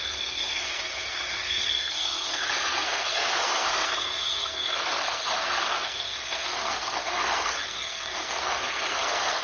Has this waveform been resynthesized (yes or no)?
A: yes